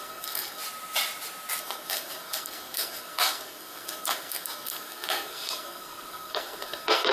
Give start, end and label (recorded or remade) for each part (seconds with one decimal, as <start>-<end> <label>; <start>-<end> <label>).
0.0-0.6 remade; 0.6-1.6 recorded; 1.6-7.1 remade